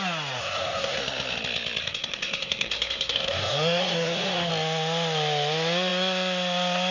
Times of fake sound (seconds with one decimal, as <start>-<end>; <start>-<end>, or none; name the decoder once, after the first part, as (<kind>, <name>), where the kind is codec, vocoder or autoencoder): 0.4-1.0 (codec, SNAC); 1.8-4.5